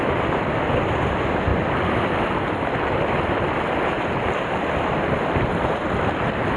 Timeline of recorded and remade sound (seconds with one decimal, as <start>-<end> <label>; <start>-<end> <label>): 0.0-6.6 recorded

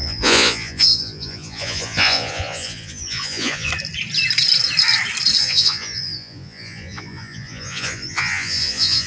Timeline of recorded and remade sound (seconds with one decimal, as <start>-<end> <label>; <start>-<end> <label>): 0.0-3.7 remade; 3.7-5.4 recorded; 5.4-9.1 remade

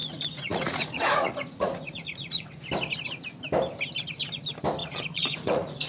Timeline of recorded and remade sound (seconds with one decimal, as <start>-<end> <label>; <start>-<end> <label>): 0.0-2.6 remade; 2.6-4.8 recorded; 4.8-5.9 remade

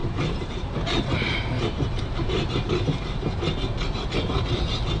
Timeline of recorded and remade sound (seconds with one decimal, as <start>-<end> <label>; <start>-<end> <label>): 0.0-2.7 remade; 2.7-5.0 recorded

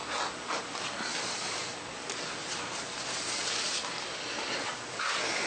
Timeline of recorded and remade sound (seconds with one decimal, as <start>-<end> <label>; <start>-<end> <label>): 0.0-2.4 recorded; 2.4-4.5 remade; 4.5-5.5 recorded